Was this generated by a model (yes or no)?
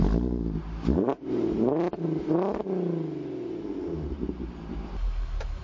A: no